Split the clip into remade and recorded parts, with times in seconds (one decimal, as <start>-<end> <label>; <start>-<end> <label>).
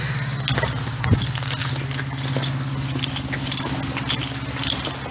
0.0-5.1 recorded